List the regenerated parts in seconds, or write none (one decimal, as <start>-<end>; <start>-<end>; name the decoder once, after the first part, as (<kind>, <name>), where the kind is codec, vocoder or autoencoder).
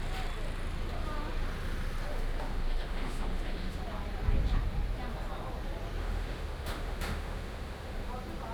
2.1-3.8 (autoencoder, DAC-VAE); 6.0-8.1